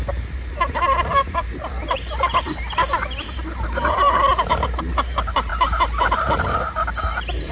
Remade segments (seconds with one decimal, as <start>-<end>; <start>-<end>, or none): 0.0-7.5